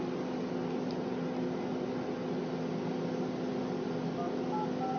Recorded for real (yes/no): yes